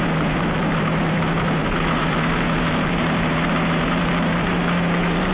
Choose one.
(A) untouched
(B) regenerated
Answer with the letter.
B